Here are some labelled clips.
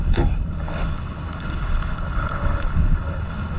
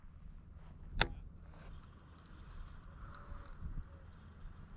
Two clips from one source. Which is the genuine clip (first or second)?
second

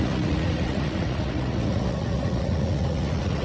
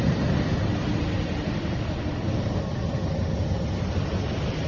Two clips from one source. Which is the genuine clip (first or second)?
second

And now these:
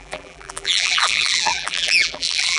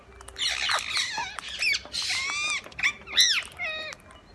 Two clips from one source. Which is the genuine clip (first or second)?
second